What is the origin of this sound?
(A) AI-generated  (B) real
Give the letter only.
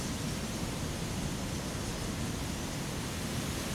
B